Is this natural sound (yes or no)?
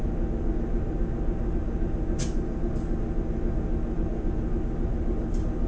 yes